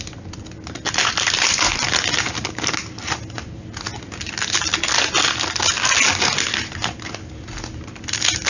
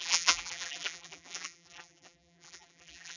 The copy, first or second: second